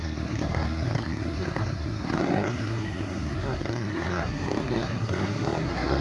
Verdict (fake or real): fake